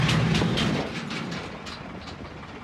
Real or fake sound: real